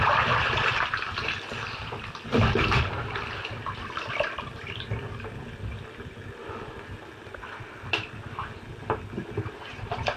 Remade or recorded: remade